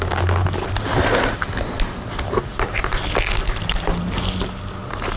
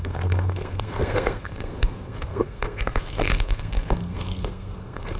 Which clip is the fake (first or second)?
second